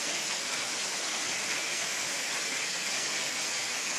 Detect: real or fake fake